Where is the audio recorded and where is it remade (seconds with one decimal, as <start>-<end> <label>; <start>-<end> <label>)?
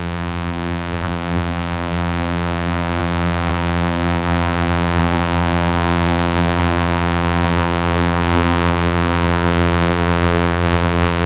0.0-11.3 remade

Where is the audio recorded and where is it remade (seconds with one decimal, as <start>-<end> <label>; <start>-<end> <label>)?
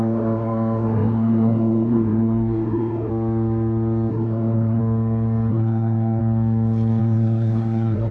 0.0-3.1 remade; 3.1-4.1 recorded; 4.1-4.8 remade; 4.8-5.5 recorded; 5.5-6.2 remade; 6.2-7.0 recorded; 7.0-8.1 remade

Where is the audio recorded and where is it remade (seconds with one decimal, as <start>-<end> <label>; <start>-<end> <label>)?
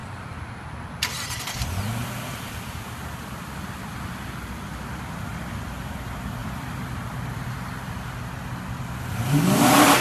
0.0-2.8 remade; 2.8-5.3 recorded; 5.3-5.8 remade; 5.8-6.4 recorded; 6.4-7.9 remade; 7.9-10.0 recorded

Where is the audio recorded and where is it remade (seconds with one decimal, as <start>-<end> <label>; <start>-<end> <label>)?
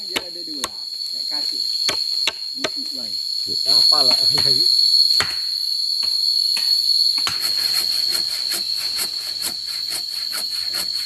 0.0-5.9 recorded; 5.9-6.5 remade; 6.5-11.1 recorded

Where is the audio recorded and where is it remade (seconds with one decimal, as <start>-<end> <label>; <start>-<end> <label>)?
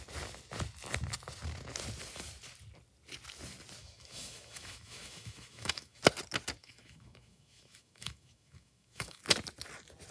0.0-3.8 recorded; 3.8-6.0 remade; 6.0-6.6 recorded; 6.6-9.2 remade; 9.2-10.1 recorded